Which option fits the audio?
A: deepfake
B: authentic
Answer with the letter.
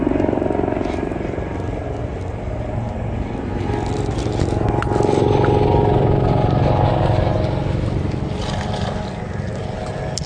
B